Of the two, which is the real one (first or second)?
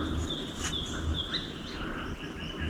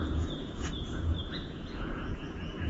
first